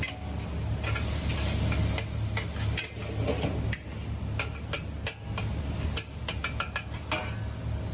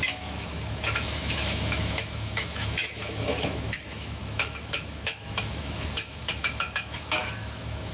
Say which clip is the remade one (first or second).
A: second